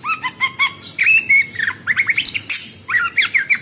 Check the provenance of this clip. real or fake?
real